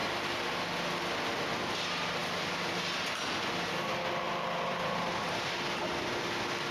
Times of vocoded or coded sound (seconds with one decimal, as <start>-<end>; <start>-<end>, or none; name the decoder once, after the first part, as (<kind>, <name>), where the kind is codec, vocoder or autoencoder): none